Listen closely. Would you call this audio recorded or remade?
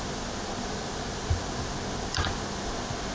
recorded